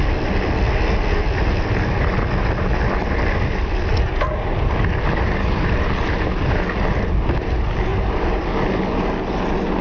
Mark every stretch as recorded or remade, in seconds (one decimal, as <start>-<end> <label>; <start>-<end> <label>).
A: 0.0-9.8 recorded